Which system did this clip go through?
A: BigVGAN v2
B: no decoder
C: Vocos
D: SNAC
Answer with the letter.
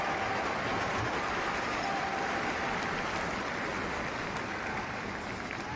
B